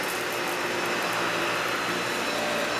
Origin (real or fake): real